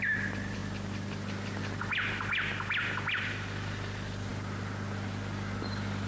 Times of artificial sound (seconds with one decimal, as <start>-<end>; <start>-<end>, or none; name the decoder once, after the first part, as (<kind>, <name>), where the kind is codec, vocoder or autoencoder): none